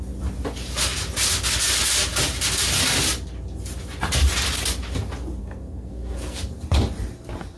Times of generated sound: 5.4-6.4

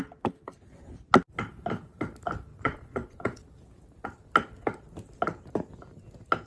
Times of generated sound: 2.5-3.4